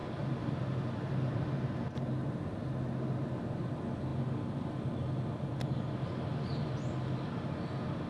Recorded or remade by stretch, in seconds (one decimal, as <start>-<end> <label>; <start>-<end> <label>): 0.0-1.6 remade; 1.6-8.1 recorded